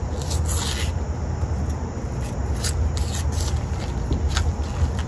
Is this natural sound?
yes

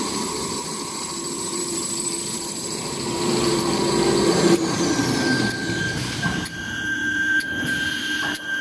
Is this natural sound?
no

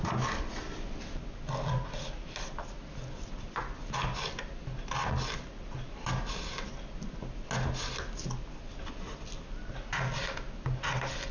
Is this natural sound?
yes